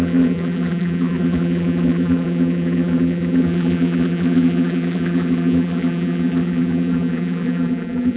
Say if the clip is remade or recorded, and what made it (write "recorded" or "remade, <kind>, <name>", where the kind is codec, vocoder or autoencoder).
remade, vocoder, BigVGAN v2